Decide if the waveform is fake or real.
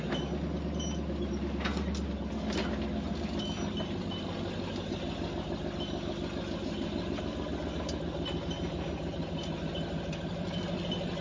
real